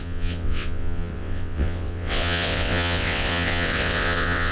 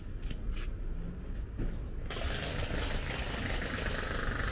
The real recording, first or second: second